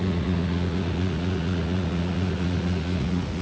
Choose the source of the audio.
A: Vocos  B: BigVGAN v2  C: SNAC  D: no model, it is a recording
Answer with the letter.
A